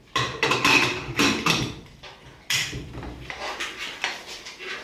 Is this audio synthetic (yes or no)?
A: yes